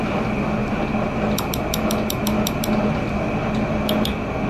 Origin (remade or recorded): recorded